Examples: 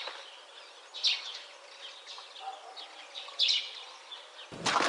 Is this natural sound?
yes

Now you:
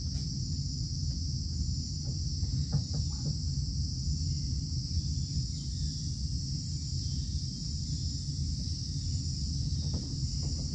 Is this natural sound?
yes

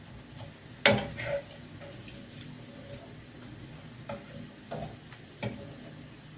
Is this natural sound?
yes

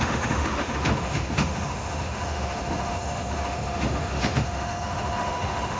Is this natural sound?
no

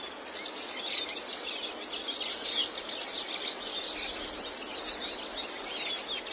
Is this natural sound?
yes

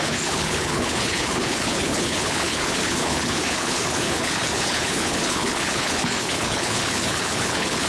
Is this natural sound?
no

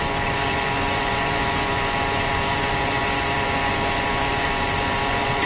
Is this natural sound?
no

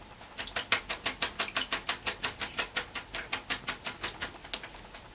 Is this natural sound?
yes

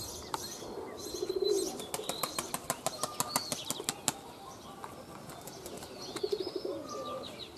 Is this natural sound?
yes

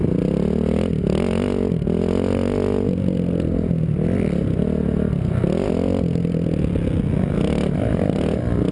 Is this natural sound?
yes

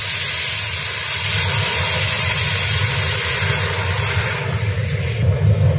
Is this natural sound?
yes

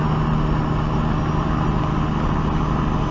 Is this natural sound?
yes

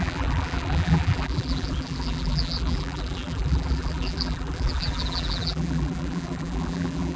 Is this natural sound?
no